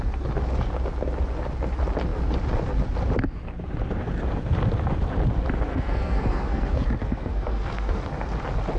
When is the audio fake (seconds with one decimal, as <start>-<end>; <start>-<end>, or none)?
5.7-8.0